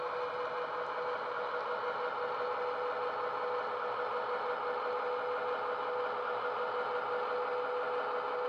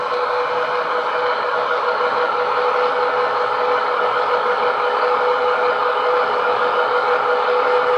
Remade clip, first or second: second